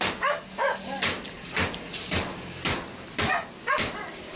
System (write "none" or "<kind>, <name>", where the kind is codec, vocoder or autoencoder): none